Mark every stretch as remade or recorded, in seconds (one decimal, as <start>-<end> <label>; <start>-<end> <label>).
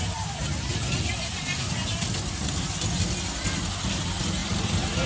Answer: 0.0-5.1 recorded